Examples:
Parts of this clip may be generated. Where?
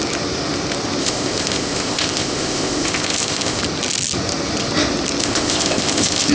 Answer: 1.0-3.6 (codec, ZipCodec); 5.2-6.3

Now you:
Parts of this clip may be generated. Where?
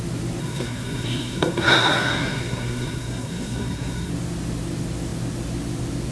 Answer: 0.4-4.1 (codec, SNAC)